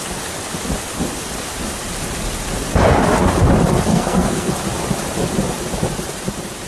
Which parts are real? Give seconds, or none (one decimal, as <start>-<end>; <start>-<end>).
0.0-3.9; 4.5-6.7